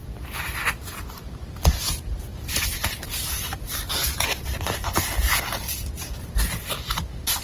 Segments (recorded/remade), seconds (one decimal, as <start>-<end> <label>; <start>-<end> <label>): 0.0-2.3 recorded; 2.3-3.9 remade; 3.9-7.4 recorded